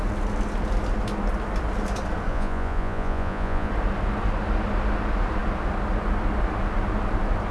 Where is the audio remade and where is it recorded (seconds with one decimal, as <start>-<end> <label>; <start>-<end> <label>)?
0.0-2.3 recorded; 2.3-3.7 remade; 3.7-7.5 recorded